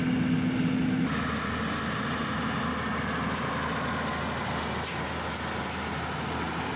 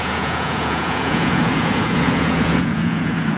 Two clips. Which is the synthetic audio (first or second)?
second